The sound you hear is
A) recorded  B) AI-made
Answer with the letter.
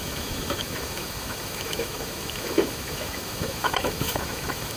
B